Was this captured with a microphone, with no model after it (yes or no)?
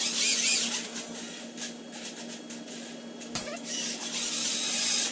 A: yes